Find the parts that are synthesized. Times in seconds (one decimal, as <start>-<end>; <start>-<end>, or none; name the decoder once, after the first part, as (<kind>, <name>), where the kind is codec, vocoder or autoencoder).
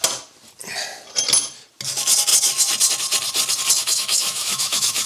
3.8-5.1 (autoencoder, DAC-VAE)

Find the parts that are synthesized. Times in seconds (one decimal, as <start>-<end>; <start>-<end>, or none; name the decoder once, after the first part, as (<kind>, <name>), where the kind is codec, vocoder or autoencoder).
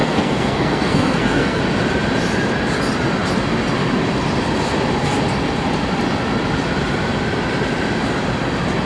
0.0-1.6 (codec, SNAC)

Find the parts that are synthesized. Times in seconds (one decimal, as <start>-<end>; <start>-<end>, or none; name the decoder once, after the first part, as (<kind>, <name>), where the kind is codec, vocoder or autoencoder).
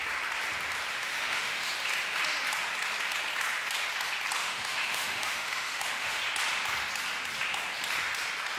0.9-1.7 (autoencoder, DAC-VAE); 4.4-6.2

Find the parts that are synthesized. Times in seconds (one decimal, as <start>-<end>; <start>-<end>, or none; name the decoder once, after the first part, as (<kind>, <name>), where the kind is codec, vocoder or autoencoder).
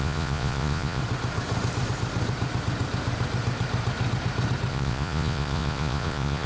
0.0-1.0 (vocoder, Vocos); 4.7-6.5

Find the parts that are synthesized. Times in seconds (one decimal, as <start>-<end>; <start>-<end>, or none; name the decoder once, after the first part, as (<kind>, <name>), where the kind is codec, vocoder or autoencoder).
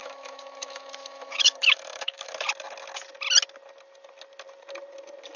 0.0-2.3 (autoencoder, DAC-VAE)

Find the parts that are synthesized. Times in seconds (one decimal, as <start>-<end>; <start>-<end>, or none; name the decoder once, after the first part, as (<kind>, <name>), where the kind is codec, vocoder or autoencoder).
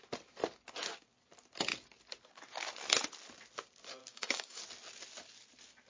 4.1-4.6 (codec, DAC)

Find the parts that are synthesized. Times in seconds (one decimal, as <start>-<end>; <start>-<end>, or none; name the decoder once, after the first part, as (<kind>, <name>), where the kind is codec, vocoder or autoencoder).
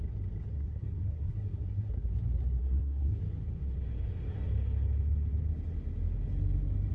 0.5-2.1 (codec, SNAC); 2.6-3.2